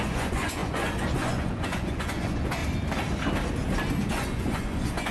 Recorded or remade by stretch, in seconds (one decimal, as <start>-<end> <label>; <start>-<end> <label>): 0.0-2.6 remade; 2.6-4.1 recorded; 4.1-5.1 remade